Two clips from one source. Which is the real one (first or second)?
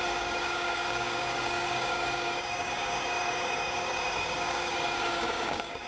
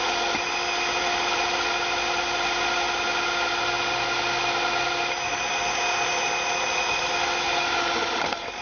second